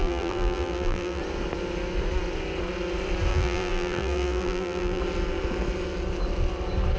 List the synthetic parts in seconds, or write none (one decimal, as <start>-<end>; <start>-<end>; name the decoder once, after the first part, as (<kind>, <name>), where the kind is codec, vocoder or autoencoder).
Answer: 0.0-1.2 (vocoder, BigVGAN v2); 3.3-5.0